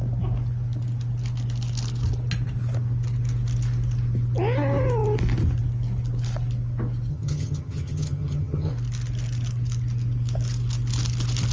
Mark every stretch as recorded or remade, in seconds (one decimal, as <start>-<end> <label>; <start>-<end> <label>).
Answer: 0.0-7.1 recorded; 7.1-8.7 remade; 8.7-11.5 recorded